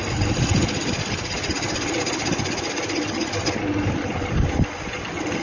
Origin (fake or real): real